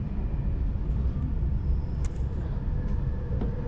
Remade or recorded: recorded